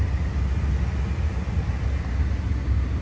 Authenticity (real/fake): real